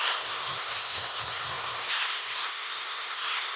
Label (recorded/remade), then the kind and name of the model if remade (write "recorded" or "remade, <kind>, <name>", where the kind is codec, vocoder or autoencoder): remade, codec, SNAC